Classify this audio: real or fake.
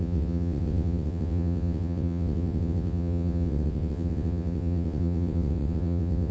fake